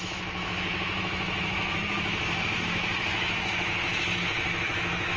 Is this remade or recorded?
remade